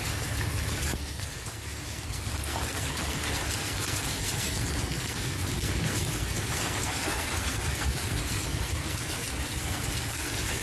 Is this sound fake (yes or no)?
yes